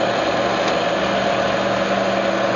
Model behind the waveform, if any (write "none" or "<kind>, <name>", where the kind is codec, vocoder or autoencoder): none